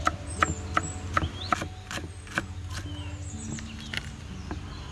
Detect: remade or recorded recorded